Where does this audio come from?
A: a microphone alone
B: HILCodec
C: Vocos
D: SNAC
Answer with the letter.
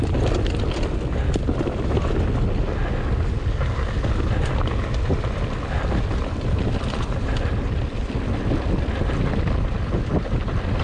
A